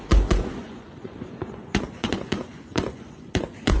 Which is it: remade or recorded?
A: remade